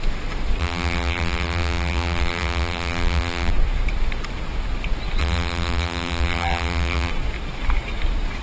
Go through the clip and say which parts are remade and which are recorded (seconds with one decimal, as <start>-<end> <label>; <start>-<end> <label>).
0.0-0.6 recorded; 0.6-3.5 remade; 3.5-5.2 recorded; 5.2-7.1 remade; 7.1-8.4 recorded